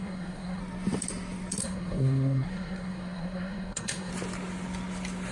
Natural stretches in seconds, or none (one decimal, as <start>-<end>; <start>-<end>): 0.6-1.6; 4.1-5.3